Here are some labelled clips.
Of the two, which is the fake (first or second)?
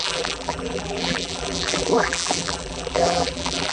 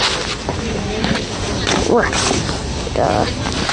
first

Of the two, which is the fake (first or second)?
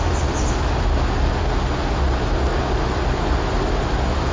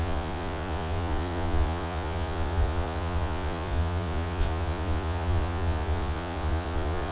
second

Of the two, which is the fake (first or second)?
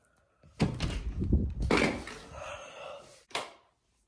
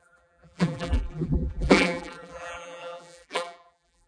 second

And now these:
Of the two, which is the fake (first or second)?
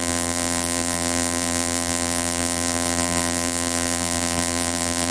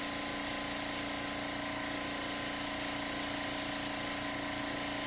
first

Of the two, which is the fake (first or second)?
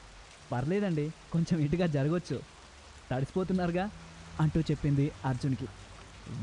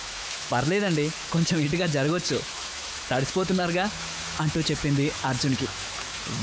second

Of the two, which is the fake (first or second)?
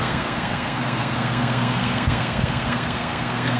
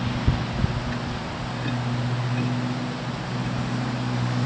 first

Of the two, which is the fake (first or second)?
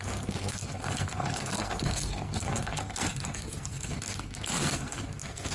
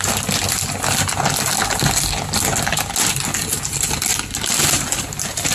first